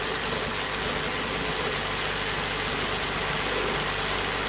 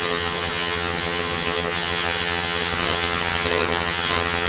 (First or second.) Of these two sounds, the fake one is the second